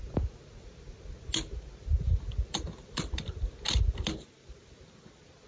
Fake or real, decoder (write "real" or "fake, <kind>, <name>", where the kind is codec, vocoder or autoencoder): real